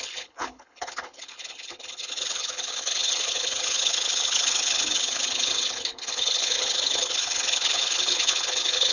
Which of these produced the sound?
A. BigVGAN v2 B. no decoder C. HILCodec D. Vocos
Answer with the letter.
C